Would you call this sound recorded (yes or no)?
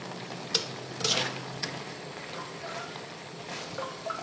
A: yes